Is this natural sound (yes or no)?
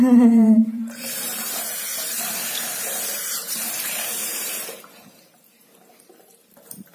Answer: no